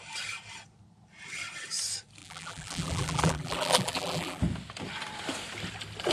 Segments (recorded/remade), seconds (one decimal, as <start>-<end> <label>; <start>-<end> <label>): 0.0-2.2 recorded; 2.2-4.4 remade; 4.4-6.1 recorded